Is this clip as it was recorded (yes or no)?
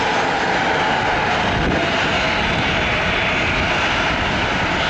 yes